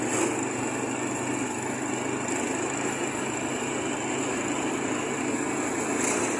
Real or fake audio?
real